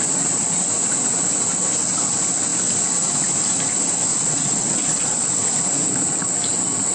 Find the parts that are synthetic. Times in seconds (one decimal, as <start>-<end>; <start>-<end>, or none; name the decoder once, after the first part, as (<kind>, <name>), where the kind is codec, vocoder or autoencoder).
4.1-5.3 (vocoder, Vocos)